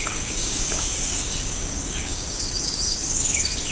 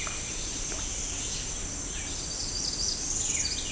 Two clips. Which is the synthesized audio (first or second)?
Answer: first